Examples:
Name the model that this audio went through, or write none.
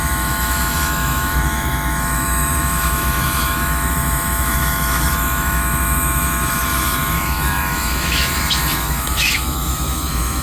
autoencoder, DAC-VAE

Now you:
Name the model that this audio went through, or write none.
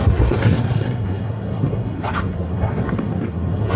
codec, SNAC